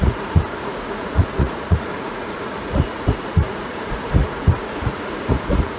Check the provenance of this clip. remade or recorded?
remade